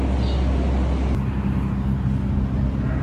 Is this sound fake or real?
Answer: real